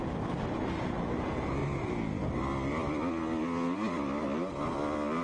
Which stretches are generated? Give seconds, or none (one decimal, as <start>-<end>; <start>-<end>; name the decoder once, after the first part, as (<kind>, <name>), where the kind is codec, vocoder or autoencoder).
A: none